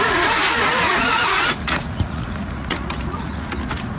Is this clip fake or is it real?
fake